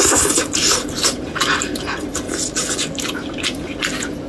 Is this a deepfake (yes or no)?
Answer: no